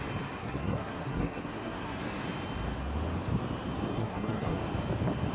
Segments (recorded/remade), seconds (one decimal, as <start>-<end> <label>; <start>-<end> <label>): 0.0-0.4 recorded; 0.4-2.0 remade; 2.0-3.9 recorded; 3.9-4.6 remade; 4.6-5.3 recorded